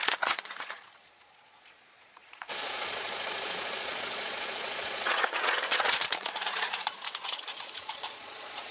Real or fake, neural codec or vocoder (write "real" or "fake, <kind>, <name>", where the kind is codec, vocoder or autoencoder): fake, vocoder, Vocos